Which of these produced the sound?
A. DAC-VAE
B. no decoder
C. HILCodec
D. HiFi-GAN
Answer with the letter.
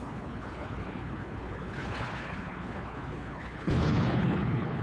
C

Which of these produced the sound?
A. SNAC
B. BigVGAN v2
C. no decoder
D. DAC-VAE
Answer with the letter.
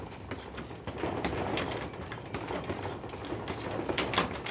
C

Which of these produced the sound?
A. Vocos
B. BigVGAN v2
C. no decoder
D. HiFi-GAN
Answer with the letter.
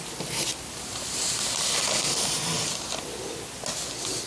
C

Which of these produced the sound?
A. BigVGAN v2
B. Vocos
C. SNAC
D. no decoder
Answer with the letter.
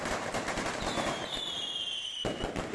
D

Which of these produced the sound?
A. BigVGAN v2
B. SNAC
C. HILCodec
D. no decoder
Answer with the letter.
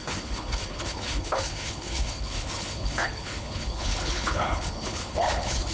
C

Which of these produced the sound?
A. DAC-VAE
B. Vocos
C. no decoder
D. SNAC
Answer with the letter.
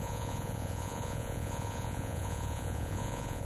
B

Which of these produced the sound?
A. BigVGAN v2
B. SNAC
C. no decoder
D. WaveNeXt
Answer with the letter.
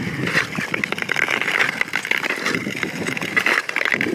C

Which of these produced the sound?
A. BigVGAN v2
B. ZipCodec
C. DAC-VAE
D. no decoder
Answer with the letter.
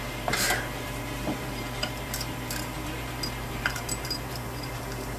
A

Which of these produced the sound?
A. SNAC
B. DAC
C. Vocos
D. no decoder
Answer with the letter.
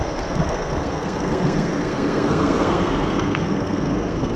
A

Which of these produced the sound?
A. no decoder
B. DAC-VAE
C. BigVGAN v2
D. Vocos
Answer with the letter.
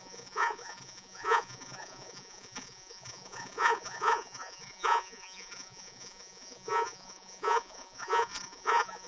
D